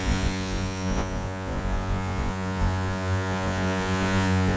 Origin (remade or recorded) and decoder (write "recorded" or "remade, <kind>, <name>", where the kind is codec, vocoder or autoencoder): remade, vocoder, Vocos